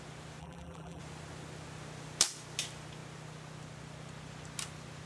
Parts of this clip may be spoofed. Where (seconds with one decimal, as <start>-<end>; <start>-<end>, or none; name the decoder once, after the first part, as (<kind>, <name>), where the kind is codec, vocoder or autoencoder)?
0.4-1.0 (vocoder, BigVGAN v2)

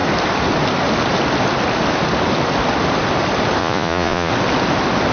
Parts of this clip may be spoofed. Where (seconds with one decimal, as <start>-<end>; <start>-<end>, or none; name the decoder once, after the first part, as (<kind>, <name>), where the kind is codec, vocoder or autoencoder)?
3.6-4.3 (vocoder, Vocos)

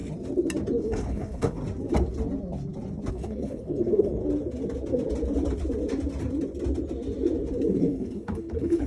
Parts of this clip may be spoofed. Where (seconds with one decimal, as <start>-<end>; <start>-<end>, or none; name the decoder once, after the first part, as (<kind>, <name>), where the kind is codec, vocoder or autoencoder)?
0.8-1.6 (codec, HILCodec); 3.1-4.2; 7.7-8.9

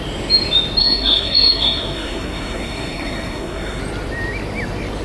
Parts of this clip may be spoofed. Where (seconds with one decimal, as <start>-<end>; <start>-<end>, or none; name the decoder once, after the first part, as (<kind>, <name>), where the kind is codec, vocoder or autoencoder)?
0.8-3.8 (codec, SNAC)